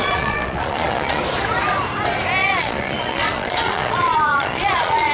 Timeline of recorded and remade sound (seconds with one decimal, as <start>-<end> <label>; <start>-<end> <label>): 0.0-1.2 remade; 1.2-2.4 recorded; 2.4-5.1 remade